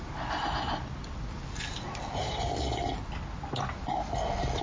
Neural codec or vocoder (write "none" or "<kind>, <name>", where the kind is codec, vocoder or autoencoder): none